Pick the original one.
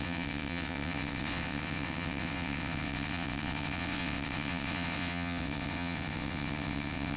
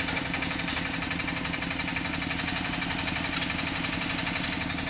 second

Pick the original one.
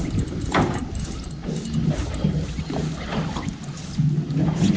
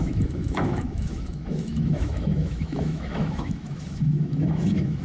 first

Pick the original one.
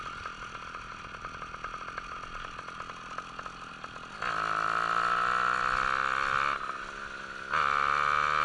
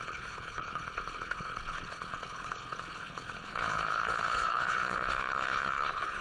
first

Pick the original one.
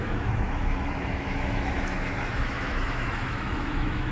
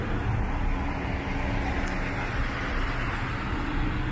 second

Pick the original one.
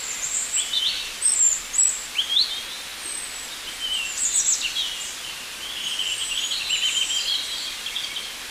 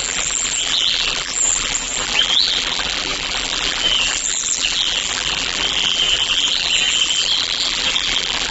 first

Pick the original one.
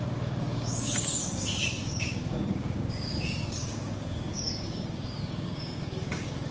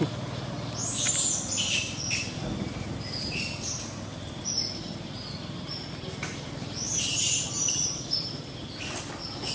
second